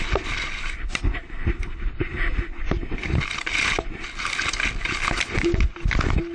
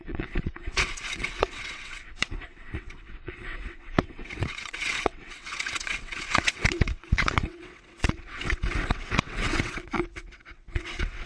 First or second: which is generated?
second